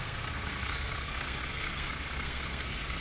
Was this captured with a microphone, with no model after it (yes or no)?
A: no